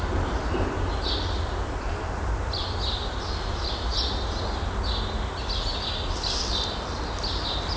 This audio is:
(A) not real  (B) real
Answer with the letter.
B